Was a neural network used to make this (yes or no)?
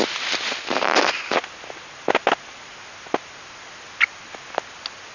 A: no